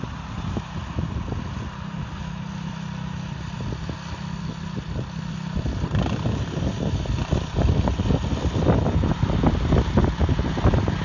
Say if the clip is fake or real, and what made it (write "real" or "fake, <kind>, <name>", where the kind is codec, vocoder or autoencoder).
real